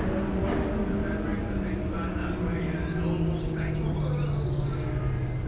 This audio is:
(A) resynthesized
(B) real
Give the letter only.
B